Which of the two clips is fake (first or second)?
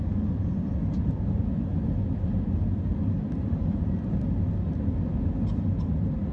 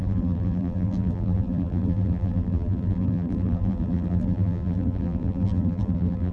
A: second